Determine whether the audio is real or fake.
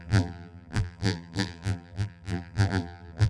fake